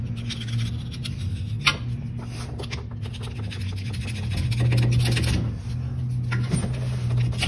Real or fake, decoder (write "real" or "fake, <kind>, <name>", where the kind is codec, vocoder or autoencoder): real